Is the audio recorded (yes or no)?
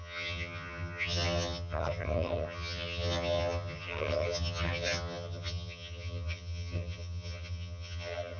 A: no